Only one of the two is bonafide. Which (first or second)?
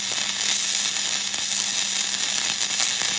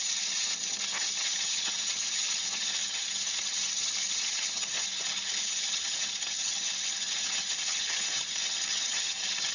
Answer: first